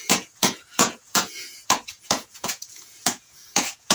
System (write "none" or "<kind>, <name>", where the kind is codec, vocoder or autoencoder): vocoder, Vocos